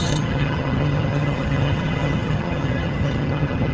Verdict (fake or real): fake